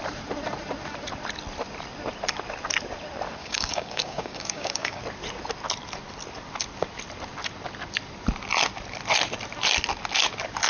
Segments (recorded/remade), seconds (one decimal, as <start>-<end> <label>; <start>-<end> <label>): 0.0-3.4 recorded; 3.4-5.0 remade; 5.0-10.7 recorded

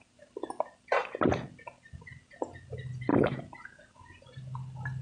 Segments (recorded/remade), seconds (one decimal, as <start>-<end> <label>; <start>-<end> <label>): 0.0-3.1 recorded; 3.1-3.9 remade; 3.9-5.0 recorded